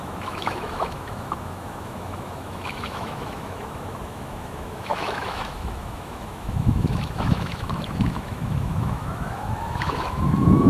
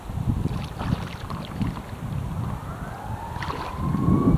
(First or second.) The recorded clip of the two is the second